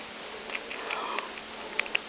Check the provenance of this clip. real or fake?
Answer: real